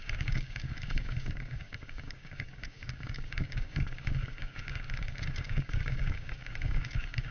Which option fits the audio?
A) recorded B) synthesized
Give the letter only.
B